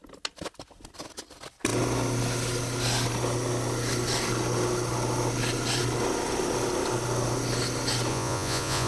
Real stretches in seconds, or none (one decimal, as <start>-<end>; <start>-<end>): 0.0-8.1